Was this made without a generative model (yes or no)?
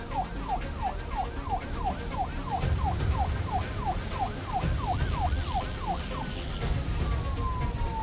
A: yes